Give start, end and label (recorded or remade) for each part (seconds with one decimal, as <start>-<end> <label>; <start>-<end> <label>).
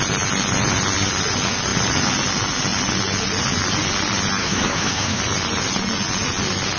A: 0.0-4.4 recorded; 4.4-5.2 remade; 5.2-6.8 recorded